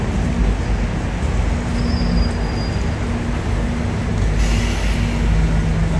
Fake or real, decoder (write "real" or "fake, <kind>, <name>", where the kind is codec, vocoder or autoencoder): real